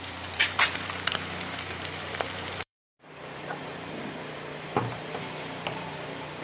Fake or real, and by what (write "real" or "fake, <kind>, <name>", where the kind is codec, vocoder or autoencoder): fake, vocoder, BigVGAN v2